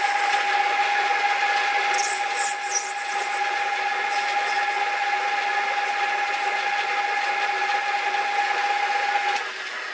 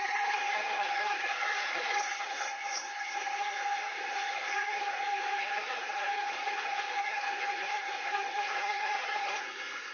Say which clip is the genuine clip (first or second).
first